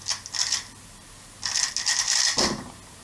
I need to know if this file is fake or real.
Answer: real